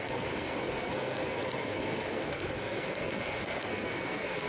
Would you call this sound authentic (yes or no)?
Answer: no